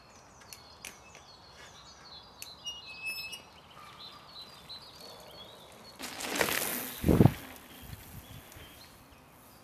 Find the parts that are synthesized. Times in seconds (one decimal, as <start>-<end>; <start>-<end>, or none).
none